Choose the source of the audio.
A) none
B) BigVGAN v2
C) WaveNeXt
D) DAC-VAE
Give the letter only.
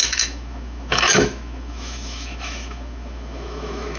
D